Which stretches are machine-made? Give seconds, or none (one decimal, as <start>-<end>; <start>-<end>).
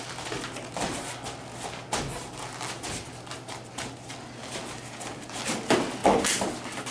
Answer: none